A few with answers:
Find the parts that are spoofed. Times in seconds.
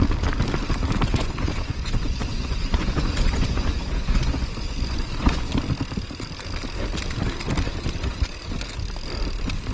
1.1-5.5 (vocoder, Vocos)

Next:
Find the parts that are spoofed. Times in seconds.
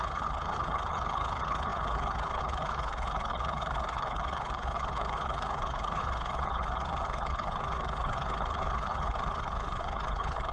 0.0-10.5 (codec, HILCodec)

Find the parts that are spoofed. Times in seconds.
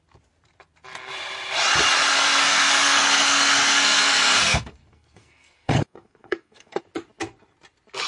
2.1-6.8 (codec, SNAC)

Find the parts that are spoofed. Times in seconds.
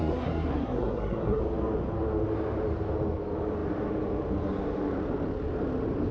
0.0-1.4 (codec, SNAC)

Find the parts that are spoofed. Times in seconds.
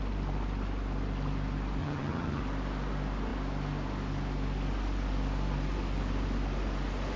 1.8-2.4 (vocoder, HiFi-GAN)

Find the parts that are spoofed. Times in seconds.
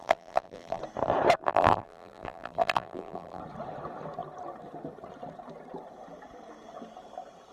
0.0-0.8 (vocoder, BigVGAN v2); 1.4-3.4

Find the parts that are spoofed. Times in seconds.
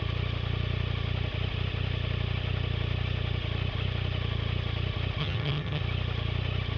5.2-5.8 (vocoder, HiFi-GAN)